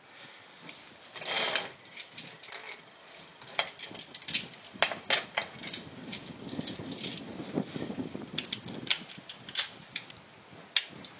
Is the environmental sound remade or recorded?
recorded